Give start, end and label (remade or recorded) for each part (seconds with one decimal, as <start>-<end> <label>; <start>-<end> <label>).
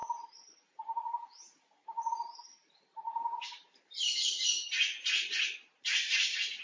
0.0-6.6 remade